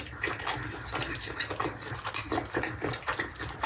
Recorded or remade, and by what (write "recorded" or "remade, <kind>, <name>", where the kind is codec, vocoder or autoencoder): recorded